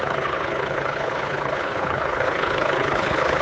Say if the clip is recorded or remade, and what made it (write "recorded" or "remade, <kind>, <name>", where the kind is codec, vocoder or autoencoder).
remade, codec, HILCodec